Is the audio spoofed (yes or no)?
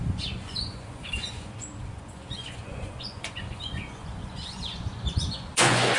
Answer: yes